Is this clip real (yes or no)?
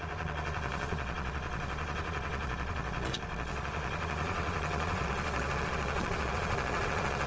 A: no